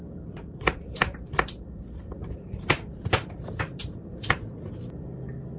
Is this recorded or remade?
remade